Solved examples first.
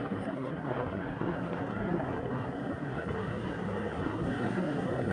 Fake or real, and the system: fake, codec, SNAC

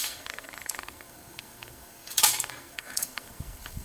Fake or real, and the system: fake, codec, SNAC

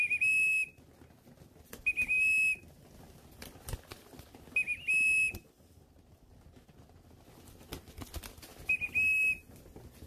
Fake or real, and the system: real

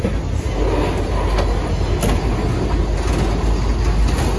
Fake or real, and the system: real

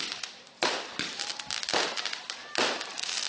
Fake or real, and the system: real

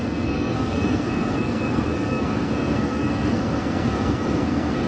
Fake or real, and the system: fake, codec, SNAC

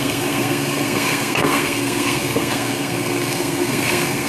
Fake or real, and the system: fake, codec, SNAC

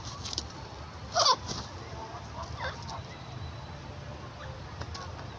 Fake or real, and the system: real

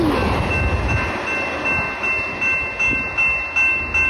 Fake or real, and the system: real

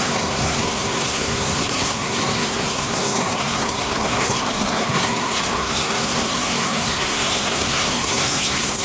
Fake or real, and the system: fake, codec, SNAC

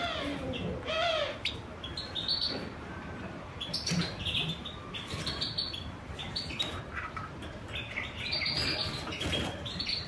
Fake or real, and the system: real